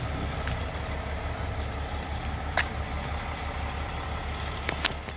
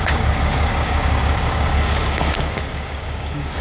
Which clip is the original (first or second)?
first